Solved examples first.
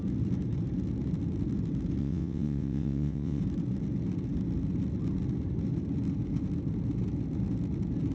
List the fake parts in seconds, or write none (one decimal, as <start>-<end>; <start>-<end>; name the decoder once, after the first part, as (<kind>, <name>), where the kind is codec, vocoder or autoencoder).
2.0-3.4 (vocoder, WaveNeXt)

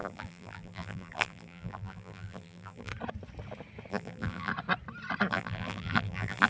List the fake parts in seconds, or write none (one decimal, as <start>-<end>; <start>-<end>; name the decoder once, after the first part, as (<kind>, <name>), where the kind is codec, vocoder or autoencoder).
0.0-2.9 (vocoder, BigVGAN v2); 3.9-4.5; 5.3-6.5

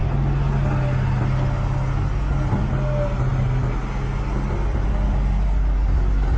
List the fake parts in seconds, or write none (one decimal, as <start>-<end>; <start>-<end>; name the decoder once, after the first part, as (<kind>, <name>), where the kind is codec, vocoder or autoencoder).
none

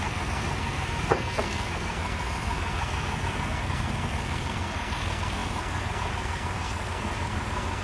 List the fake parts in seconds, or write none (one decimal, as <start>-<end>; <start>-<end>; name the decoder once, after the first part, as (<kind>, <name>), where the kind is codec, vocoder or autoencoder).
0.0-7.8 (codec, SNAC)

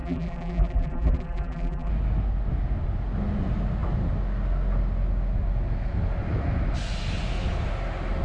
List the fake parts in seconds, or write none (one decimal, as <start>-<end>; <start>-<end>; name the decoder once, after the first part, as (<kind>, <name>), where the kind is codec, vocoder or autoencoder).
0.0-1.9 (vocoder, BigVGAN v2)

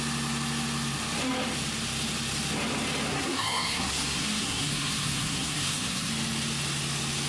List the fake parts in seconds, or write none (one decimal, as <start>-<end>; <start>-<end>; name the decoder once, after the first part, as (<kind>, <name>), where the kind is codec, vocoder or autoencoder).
3.1-6.1 (codec, SNAC)

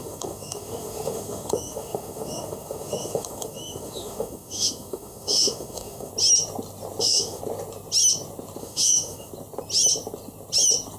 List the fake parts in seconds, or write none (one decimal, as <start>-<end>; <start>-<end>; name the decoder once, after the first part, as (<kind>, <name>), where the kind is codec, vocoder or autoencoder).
0.0-6.1 (autoencoder, DAC-VAE); 7.0-7.4; 8.6-9.3

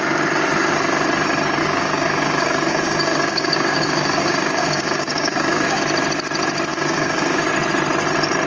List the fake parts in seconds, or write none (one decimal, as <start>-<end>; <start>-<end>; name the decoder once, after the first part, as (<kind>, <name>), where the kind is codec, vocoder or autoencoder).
1.6-5.8 (codec, DAC); 6.7-7.5